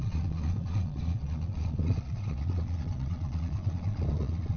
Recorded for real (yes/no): no